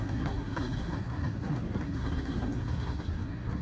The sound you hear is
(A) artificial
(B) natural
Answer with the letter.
A